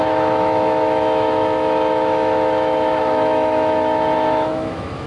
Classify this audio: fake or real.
fake